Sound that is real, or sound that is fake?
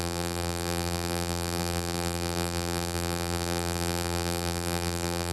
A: fake